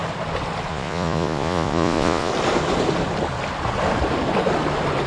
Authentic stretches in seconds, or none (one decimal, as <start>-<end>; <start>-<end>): 0.0-0.7; 2.3-5.1